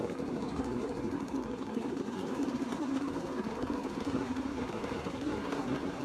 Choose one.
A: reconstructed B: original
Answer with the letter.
A